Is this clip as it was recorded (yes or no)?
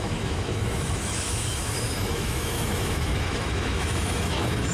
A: no